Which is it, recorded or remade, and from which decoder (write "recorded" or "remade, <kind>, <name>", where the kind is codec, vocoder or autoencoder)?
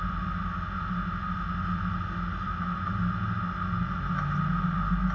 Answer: recorded